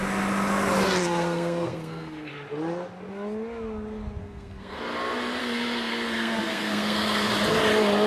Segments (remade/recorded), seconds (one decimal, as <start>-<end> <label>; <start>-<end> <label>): 0.0-1.0 recorded; 1.0-2.3 remade; 2.3-4.2 recorded; 4.2-4.8 remade; 4.8-5.4 recorded; 5.4-7.3 remade; 7.3-8.1 recorded